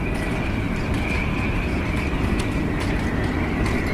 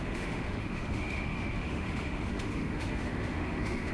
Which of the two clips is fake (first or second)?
second